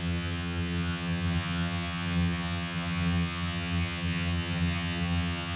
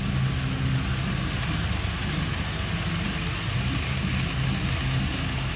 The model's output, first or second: first